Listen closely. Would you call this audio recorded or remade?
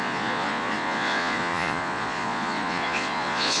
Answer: remade